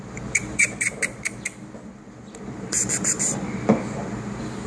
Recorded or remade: remade